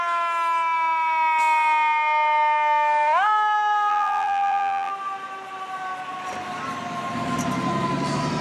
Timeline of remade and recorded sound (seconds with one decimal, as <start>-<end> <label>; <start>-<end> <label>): 0.0-3.9 recorded; 3.9-4.9 remade; 4.9-8.4 recorded